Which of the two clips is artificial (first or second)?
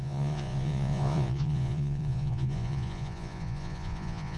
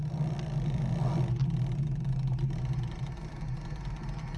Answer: first